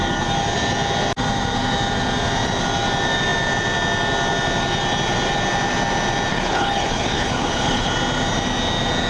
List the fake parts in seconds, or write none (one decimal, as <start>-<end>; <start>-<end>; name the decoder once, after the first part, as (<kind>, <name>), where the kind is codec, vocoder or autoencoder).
6.3-7.9 (codec, HILCodec)